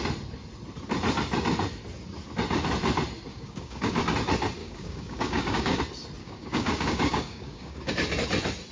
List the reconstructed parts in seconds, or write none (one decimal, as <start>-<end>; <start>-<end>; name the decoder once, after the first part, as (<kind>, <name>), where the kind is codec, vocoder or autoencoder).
3.3-4.0 (codec, DAC); 4.6-5.8; 6.2-7.9